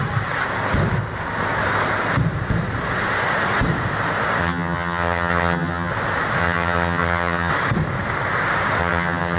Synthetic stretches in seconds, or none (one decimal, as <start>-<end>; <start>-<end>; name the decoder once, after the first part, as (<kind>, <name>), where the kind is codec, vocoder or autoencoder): 4.4-5.9 (vocoder, HiFi-GAN); 6.4-7.5; 8.8-9.4